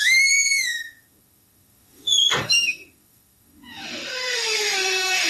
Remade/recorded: remade